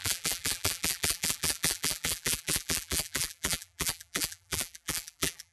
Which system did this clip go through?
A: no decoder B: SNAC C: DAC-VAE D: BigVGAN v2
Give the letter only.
D